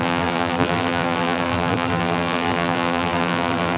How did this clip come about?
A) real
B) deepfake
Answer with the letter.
B